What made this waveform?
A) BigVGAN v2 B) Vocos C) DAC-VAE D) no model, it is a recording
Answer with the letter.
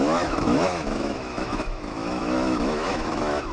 C